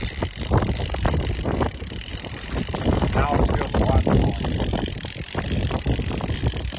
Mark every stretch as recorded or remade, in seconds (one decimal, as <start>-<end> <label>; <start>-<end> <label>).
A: 0.0-6.8 recorded